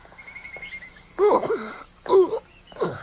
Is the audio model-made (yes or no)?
yes